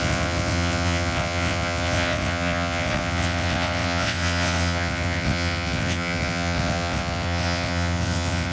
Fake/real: fake